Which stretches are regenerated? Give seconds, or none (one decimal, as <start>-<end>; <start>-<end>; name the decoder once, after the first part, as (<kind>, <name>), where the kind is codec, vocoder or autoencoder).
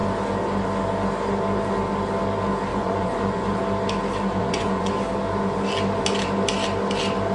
2.7-3.6 (vocoder, Vocos); 4.4-4.9